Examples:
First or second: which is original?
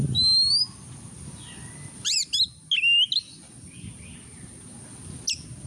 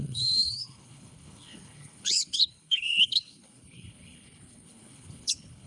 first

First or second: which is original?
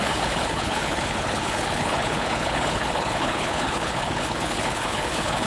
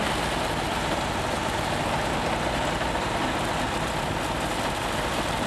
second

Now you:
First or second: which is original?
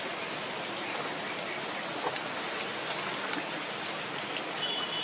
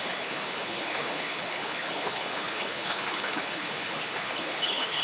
first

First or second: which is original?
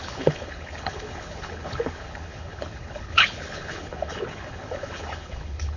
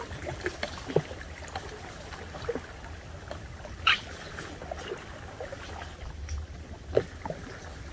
second